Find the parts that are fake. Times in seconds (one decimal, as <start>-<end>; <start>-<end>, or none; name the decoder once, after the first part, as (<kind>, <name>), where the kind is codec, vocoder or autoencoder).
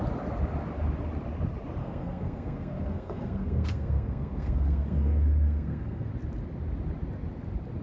1.8-6.1 (codec, SNAC)